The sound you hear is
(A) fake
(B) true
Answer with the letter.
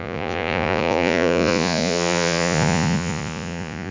A